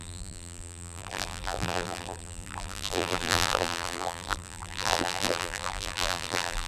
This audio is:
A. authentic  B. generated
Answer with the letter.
B